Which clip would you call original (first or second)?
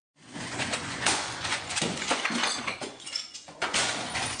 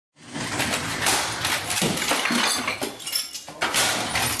second